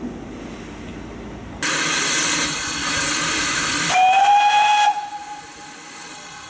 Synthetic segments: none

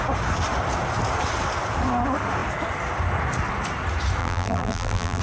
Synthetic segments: 4.2-5.2 (vocoder, BigVGAN v2)

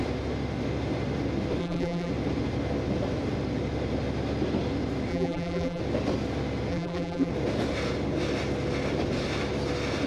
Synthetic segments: 1.6-2.1 (vocoder, BigVGAN v2); 5.1-5.8; 6.7-7.3